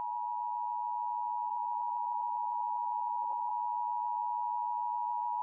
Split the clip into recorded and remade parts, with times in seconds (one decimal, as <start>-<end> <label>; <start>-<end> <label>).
0.0-1.5 recorded; 1.5-3.5 remade; 3.5-5.4 recorded

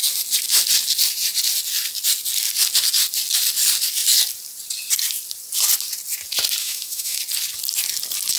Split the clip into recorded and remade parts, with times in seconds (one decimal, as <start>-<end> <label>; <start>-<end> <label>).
0.0-6.6 recorded; 6.6-7.2 remade; 7.2-8.4 recorded

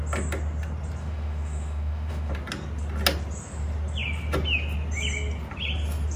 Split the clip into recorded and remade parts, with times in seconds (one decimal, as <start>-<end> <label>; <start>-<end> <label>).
0.0-1.0 recorded; 1.0-2.3 remade; 2.3-6.2 recorded

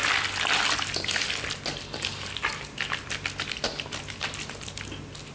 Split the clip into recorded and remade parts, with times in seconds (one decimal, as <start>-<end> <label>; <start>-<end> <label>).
0.0-5.3 recorded

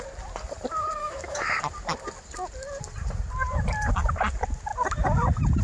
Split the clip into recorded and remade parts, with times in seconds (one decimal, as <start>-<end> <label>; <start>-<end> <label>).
0.0-1.0 recorded; 1.0-1.6 remade; 1.6-5.6 recorded

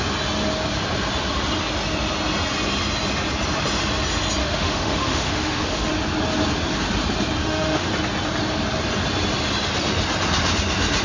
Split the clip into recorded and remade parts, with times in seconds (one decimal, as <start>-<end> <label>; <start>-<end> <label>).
0.0-4.4 recorded; 4.4-5.9 remade; 5.9-7.4 recorded; 7.4-7.9 remade; 7.9-11.0 recorded

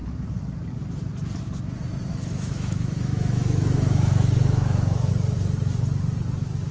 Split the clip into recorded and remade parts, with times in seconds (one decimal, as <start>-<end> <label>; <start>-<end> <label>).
0.0-2.1 recorded; 2.1-5.1 remade; 5.1-6.7 recorded

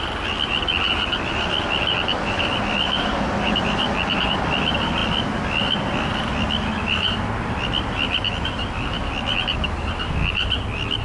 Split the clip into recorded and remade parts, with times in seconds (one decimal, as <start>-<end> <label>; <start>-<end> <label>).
0.0-11.0 recorded